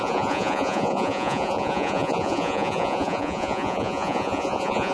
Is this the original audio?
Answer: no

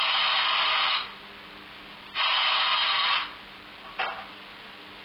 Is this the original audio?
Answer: yes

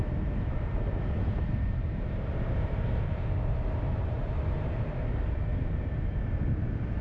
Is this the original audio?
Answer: no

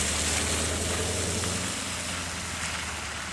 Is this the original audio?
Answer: yes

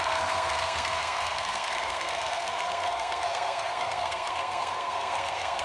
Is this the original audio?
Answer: no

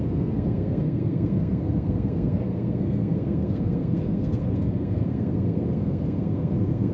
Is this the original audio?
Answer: no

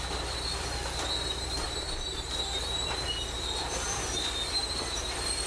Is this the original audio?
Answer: yes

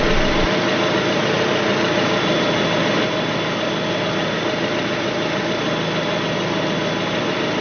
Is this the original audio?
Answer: yes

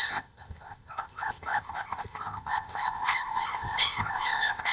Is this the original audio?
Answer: no